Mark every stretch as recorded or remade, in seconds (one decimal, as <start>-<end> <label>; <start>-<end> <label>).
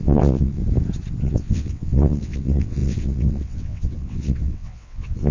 0.0-0.6 remade; 0.6-1.2 recorded; 1.2-5.3 remade